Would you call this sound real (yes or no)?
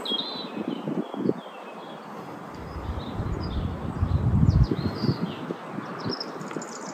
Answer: yes